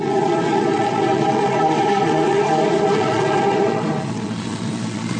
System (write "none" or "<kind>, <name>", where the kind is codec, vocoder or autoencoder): vocoder, Vocos